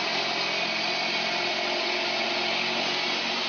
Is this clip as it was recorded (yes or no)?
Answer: yes